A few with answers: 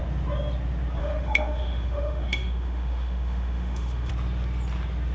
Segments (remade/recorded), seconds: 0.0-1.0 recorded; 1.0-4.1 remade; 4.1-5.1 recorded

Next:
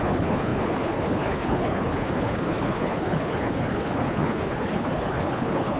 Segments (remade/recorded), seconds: 0.0-5.8 remade

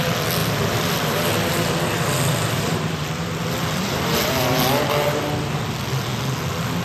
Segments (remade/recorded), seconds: 0.0-0.4 recorded; 0.4-4.3 remade; 4.3-6.8 recorded

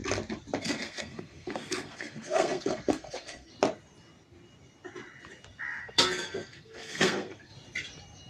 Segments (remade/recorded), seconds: 0.0-0.6 recorded; 0.6-3.5 remade; 3.5-5.8 recorded; 5.8-7.5 remade; 7.5-8.3 recorded

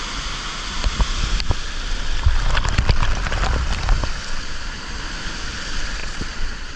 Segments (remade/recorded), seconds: 0.0-6.0 recorded; 6.0-6.8 remade

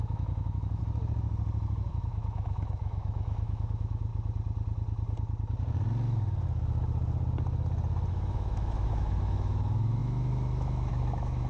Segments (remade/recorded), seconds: 0.0-0.8 remade; 0.8-1.9 recorded; 1.9-4.1 remade; 4.1-8.1 recorded; 8.1-11.5 remade

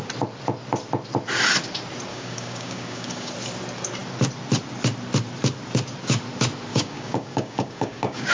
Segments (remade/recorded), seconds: 0.0-2.1 recorded; 2.1-3.3 remade; 3.3-6.7 recorded; 6.7-8.3 remade